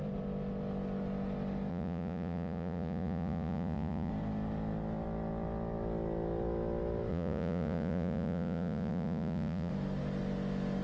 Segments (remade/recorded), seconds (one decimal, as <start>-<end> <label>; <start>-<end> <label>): 0.0-1.7 recorded; 1.7-4.1 remade; 4.1-7.1 recorded; 7.1-9.7 remade; 9.7-10.8 recorded